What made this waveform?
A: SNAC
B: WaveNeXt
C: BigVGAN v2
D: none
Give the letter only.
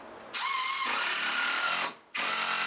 D